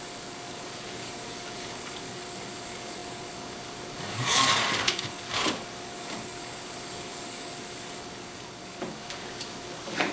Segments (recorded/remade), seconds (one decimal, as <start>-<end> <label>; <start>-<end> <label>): 0.0-10.1 remade